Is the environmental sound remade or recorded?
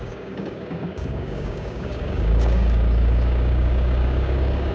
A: remade